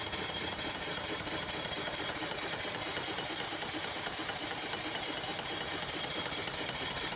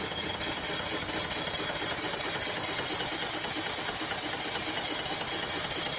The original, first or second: second